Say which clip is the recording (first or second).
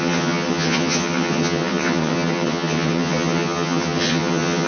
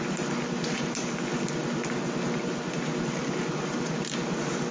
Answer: second